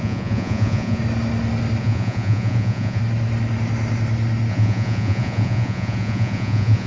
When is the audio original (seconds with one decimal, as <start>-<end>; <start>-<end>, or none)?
1.0-1.8; 3.0-4.5